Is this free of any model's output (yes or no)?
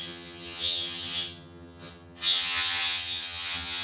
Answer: no